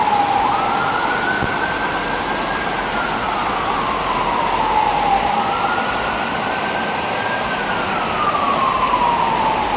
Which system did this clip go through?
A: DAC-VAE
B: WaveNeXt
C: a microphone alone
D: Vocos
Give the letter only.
C